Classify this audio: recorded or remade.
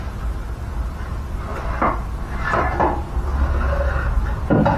recorded